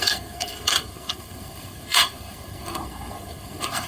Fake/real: fake